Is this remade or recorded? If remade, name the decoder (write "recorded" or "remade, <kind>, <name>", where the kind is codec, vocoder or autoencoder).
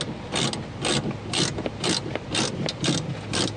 recorded